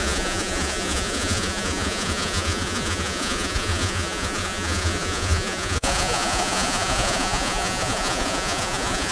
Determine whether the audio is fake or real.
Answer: fake